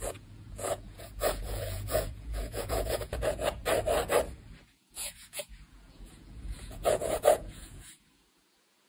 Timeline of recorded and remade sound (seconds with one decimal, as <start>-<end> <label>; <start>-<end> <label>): 0.0-3.6 remade; 3.6-4.6 recorded; 4.6-8.9 remade